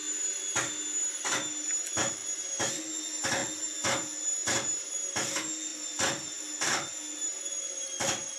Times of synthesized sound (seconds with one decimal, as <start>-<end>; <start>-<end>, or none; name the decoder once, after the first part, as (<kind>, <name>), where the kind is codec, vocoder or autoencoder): none